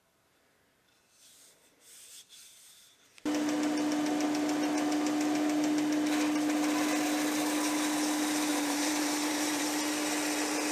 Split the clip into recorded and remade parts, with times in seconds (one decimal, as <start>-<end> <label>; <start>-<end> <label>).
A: 0.0-8.5 recorded; 8.5-9.6 remade; 9.6-10.7 recorded